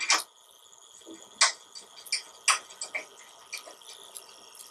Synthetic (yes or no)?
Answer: no